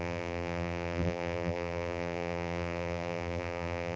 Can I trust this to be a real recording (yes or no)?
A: no